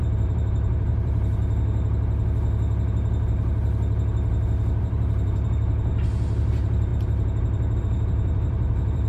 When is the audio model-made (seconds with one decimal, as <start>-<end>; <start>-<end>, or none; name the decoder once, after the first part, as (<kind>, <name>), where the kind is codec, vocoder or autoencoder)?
0.0-1.4 (vocoder, BigVGAN v2); 4.8-5.9; 6.5-9.1